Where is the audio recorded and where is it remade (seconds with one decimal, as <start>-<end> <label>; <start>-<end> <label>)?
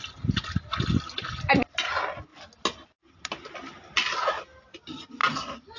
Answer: 0.0-5.8 recorded